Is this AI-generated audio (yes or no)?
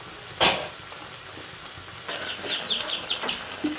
no